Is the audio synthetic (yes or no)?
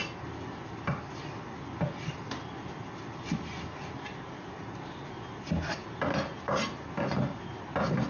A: no